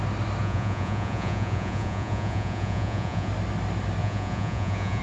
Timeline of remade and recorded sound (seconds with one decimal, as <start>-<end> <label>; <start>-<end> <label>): 0.0-0.4 recorded; 0.4-3.3 remade; 3.3-4.0 recorded; 4.0-5.0 remade